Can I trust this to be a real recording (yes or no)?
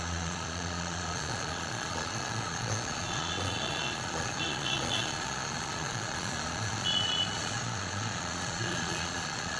no